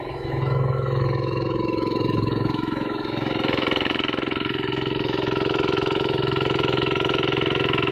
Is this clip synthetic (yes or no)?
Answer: yes